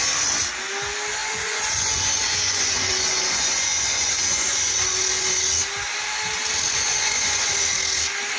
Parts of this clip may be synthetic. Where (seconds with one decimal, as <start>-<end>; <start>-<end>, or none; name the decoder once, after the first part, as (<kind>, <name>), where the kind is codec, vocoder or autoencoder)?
1.2-5.4 (vocoder, Vocos); 6.7-7.5